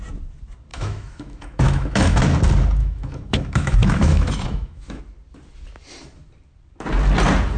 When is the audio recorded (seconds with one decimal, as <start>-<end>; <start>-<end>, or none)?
0.0-0.7; 2.2-2.8; 5.0-7.6